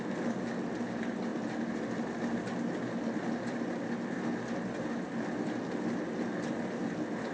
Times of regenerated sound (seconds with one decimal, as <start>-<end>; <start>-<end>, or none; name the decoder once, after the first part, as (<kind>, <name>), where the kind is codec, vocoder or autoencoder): none